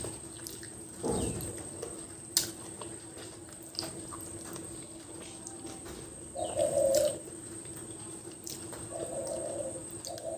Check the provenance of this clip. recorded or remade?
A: recorded